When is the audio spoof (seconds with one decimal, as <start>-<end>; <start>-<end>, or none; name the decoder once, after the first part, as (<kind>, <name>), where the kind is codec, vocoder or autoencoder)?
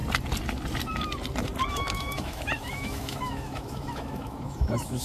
1.7-5.0 (autoencoder, DAC-VAE)